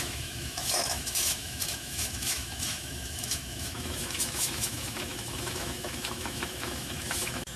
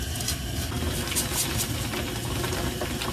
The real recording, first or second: second